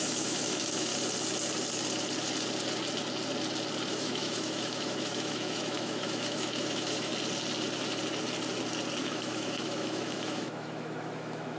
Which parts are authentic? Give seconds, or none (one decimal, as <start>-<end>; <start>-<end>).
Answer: 0.9-3.9; 7.1-9.0